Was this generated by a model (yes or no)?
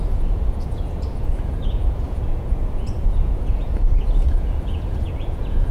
yes